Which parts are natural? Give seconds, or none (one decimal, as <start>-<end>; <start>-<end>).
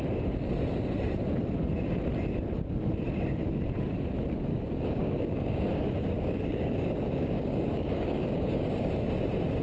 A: 0.0-4.5; 9.1-9.6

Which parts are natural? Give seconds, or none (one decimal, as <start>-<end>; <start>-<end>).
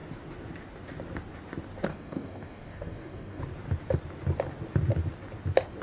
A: 0.0-1.9; 3.4-5.8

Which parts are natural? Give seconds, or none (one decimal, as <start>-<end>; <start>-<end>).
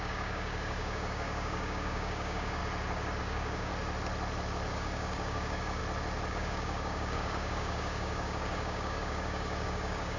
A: 2.6-3.2; 3.7-4.7; 5.8-6.3